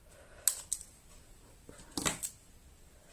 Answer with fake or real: real